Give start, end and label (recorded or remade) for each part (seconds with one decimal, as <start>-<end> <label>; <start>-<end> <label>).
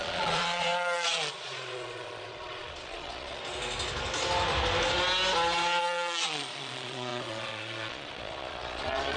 0.0-3.4 remade; 3.4-5.8 recorded; 5.8-9.2 remade